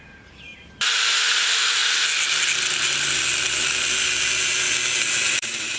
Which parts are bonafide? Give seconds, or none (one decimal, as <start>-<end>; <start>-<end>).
0.5-1.4; 1.8-5.3